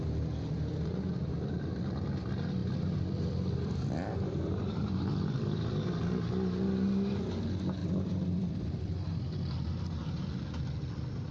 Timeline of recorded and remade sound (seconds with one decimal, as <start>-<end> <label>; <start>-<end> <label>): 0.0-2.6 recorded; 2.6-6.0 remade; 6.0-7.8 recorded; 7.8-9.4 remade; 9.4-11.3 recorded

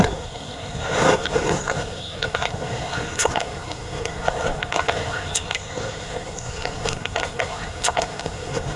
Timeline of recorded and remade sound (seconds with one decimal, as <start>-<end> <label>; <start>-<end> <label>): 0.0-8.8 remade